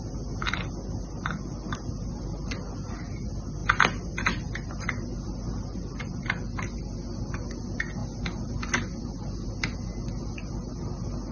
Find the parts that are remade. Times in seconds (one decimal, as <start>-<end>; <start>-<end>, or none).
none